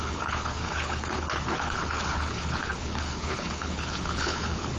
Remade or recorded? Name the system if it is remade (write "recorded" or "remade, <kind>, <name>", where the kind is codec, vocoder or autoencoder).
remade, codec, HILCodec